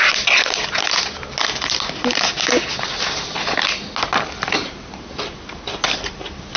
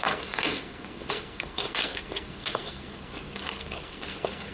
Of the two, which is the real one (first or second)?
first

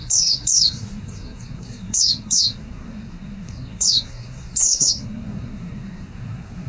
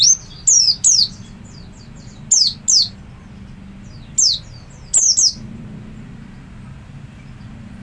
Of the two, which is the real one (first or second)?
second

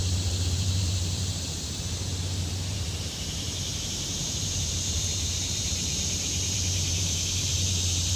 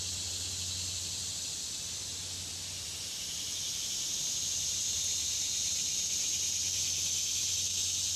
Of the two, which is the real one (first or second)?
second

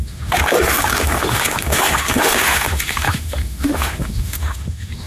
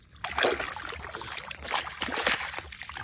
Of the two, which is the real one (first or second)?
second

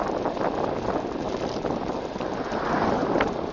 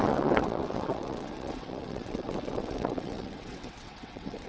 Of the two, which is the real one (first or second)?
first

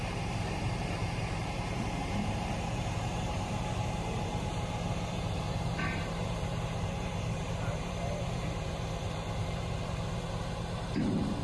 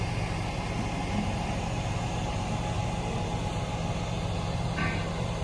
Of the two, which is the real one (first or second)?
second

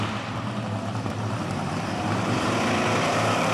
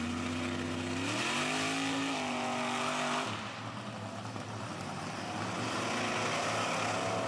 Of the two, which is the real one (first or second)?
second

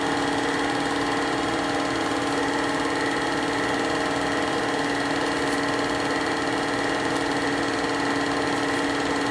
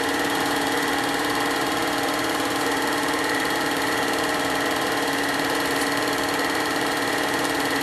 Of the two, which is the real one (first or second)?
first